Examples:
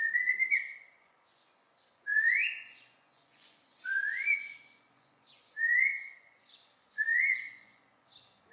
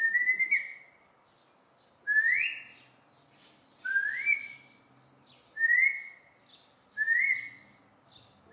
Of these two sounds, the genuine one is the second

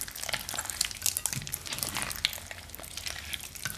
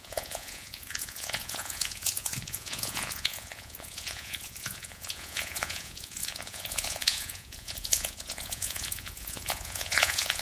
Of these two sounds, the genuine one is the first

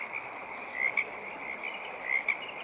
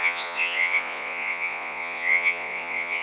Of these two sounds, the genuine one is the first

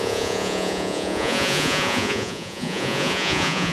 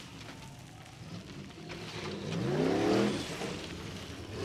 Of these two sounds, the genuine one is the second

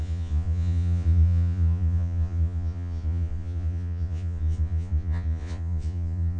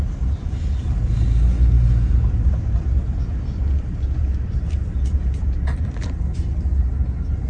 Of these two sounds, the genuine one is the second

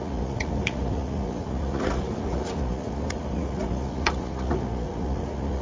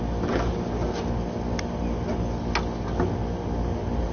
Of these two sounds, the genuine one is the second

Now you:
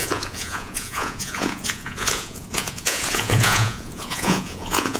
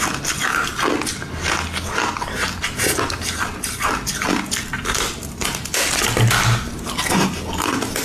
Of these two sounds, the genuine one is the second